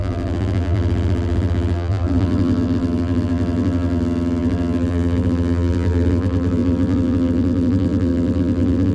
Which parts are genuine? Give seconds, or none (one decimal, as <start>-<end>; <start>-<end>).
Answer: none